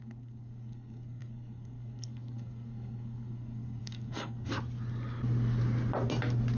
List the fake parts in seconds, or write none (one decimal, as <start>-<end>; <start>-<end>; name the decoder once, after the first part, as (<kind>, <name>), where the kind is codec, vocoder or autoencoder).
0.0-4.5 (codec, SNAC)